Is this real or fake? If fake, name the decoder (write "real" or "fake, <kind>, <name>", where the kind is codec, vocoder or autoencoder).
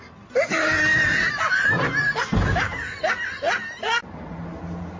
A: real